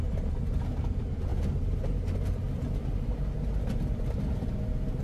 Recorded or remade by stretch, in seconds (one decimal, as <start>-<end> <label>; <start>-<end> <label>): 0.0-1.3 remade; 1.3-4.3 recorded; 4.3-5.0 remade